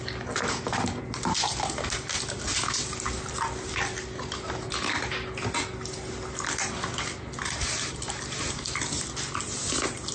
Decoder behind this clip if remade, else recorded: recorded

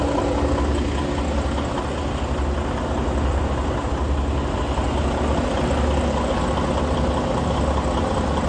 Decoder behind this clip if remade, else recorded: recorded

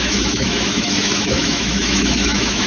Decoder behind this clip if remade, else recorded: remade, autoencoder, DAC-VAE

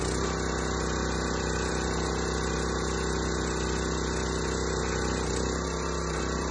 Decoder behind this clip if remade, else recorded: recorded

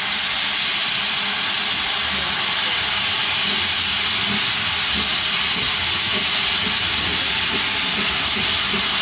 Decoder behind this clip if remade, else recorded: recorded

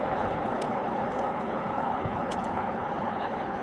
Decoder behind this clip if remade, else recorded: remade, codec, HILCodec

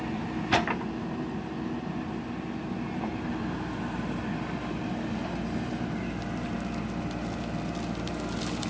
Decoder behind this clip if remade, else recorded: recorded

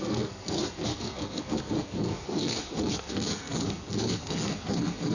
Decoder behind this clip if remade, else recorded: remade, codec, SNAC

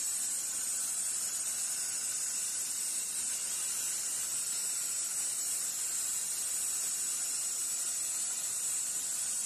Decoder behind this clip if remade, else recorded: recorded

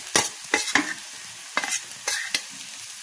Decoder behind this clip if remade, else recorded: recorded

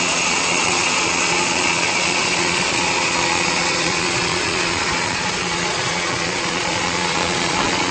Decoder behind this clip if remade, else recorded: remade, vocoder, Vocos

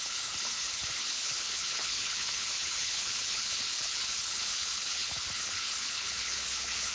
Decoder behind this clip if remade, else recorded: remade, codec, HILCodec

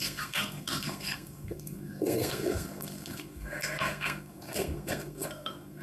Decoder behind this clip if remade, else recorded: remade, codec, SNAC